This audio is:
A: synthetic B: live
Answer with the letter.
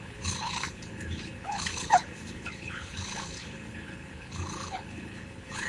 A